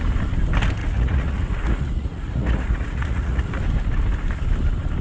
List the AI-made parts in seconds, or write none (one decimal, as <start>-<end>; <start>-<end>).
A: 0.8-3.6